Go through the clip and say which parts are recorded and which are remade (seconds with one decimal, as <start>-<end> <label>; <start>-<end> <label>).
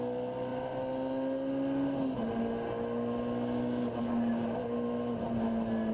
0.0-5.9 recorded